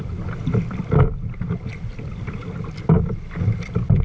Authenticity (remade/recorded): recorded